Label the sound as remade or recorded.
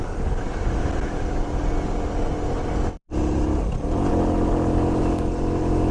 recorded